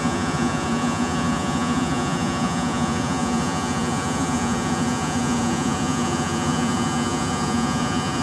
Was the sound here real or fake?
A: fake